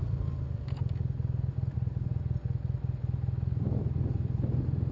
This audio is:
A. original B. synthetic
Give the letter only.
A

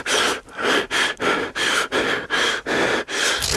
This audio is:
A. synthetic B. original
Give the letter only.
B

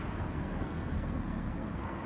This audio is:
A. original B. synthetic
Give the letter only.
B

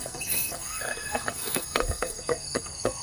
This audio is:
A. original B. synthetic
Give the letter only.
B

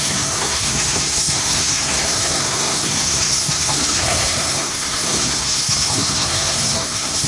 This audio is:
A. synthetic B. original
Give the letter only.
A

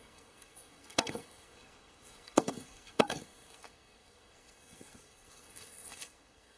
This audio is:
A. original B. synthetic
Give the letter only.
B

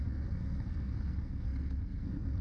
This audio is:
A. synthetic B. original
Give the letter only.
A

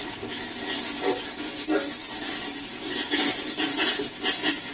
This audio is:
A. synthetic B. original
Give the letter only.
B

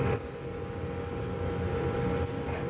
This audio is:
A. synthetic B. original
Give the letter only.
B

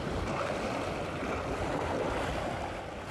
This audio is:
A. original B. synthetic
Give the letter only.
A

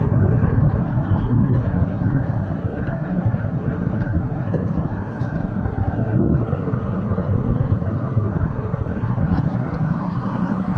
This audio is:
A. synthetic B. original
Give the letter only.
A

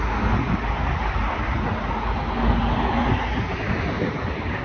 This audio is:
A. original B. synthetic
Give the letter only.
A